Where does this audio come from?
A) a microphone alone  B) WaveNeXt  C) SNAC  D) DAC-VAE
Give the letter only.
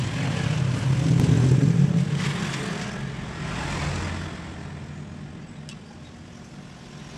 A